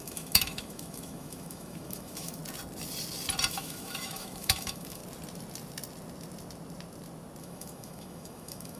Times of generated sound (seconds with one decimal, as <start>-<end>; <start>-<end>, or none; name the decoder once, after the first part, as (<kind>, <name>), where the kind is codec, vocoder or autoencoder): 0.0-2.4 (autoencoder, DAC-VAE); 3.5-5.0; 7.4-8.8